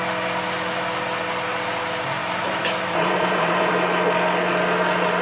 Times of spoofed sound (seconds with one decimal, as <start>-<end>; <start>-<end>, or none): 2.2-3.7